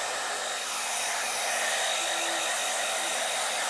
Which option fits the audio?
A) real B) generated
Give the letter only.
A